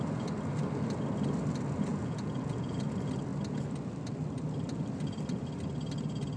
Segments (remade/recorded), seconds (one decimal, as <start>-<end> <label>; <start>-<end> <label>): 0.0-1.9 recorded; 1.9-2.8 remade; 2.8-6.4 recorded